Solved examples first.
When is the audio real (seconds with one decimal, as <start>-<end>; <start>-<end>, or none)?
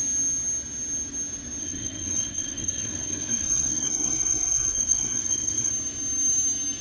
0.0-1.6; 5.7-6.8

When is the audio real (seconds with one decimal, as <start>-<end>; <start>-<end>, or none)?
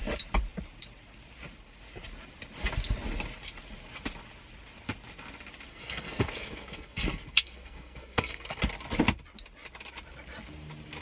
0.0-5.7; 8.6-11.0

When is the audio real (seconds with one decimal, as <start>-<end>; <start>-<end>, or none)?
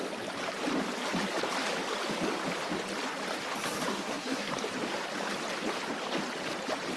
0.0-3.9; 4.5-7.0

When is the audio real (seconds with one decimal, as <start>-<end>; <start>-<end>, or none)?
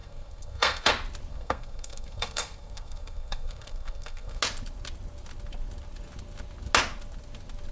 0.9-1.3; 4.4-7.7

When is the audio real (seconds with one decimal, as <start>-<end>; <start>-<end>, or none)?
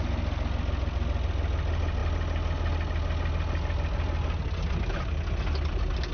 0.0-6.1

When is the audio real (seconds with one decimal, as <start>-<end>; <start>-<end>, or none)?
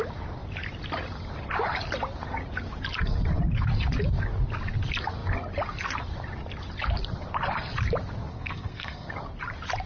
0.0-8.3; 9.1-9.9